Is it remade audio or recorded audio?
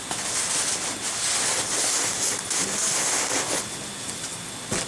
recorded